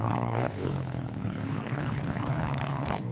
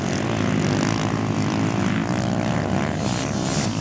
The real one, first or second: second